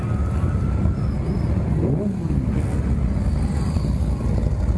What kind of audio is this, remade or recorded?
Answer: recorded